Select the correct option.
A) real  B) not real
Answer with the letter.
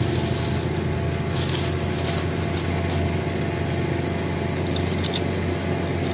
A